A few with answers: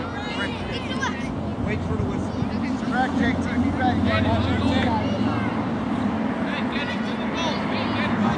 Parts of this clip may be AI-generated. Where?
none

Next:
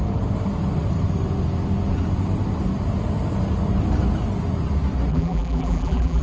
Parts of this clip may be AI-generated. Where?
5.1-6.2 (vocoder, BigVGAN v2)

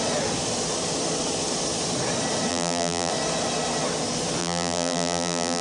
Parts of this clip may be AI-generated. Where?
2.5-3.1 (vocoder, BigVGAN v2); 4.4-5.6

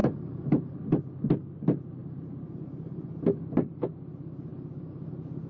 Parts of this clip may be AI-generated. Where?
0.0-1.0 (vocoder, BigVGAN v2); 2.0-3.3

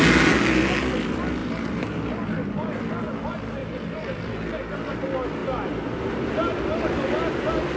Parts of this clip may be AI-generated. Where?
1.4-2.0 (vocoder, BigVGAN v2); 3.6-4.2; 5.4-6.3

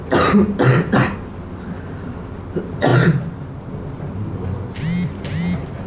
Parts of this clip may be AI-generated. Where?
none